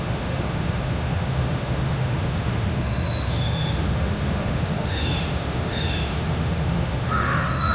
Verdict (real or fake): fake